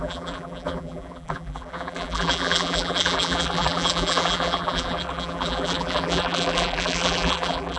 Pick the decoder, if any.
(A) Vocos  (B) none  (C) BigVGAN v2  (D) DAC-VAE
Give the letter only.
C